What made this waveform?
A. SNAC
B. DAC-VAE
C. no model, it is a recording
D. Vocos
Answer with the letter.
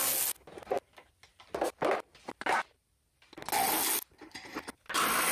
C